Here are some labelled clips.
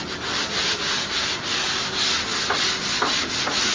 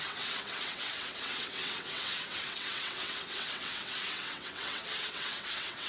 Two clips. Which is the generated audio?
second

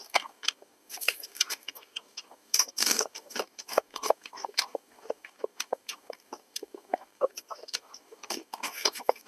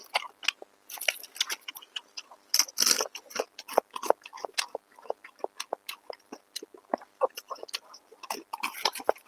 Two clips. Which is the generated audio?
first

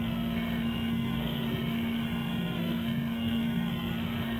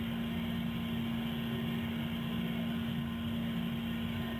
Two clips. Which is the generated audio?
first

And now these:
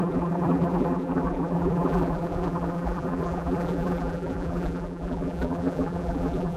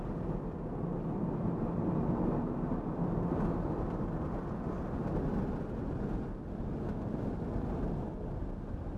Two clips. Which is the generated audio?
first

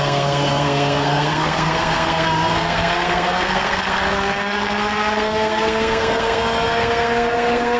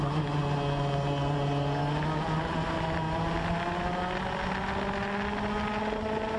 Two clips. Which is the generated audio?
first